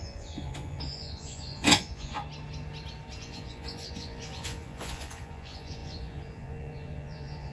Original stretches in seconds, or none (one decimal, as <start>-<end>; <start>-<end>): 2.2-3.2